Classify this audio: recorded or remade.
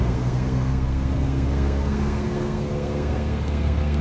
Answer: remade